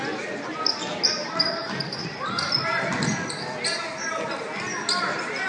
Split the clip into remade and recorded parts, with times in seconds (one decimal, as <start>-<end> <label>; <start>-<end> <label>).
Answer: 0.0-5.5 recorded